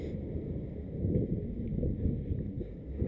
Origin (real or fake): real